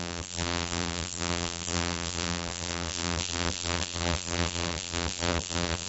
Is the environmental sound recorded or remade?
remade